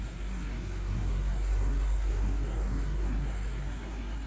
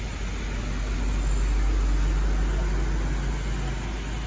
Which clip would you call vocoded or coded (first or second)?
first